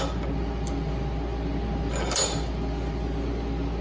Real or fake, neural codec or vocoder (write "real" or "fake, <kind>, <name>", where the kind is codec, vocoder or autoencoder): real